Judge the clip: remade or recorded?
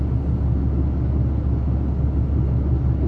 recorded